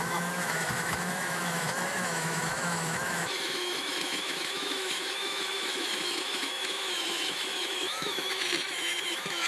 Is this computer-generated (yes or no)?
yes